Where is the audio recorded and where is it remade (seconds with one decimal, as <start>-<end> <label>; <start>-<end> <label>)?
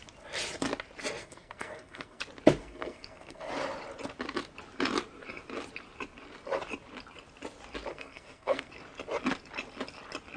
0.0-1.2 recorded; 1.2-2.2 remade; 2.2-2.6 recorded; 2.6-3.5 remade; 3.5-7.9 recorded; 7.9-8.7 remade; 8.7-10.4 recorded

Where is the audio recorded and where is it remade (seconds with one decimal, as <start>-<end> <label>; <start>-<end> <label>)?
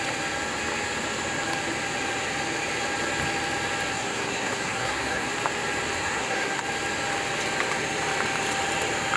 0.0-3.9 recorded; 3.9-5.3 remade; 5.3-6.0 recorded; 6.0-6.6 remade; 6.6-9.2 recorded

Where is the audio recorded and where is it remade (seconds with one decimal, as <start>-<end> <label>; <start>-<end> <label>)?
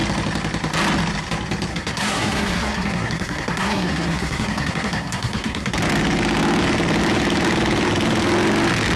0.0-1.7 recorded; 1.7-5.7 remade; 5.7-9.0 recorded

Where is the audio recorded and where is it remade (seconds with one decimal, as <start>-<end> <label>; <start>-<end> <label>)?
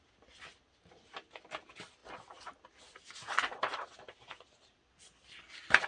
0.0-5.9 recorded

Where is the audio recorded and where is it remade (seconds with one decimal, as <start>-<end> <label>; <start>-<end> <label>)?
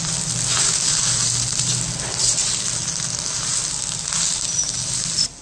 0.0-5.4 recorded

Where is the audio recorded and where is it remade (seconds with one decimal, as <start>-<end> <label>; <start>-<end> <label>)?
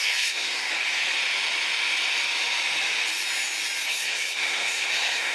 0.0-0.7 remade; 0.7-3.9 recorded; 3.9-5.3 remade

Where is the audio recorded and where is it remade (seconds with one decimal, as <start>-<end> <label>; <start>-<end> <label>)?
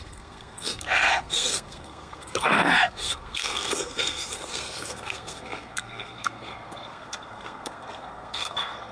0.0-8.9 remade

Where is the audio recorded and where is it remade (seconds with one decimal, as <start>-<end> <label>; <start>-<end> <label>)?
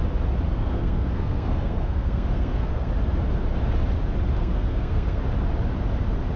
0.0-0.5 recorded; 0.5-2.9 remade; 2.9-4.4 recorded; 4.4-5.2 remade; 5.2-6.4 recorded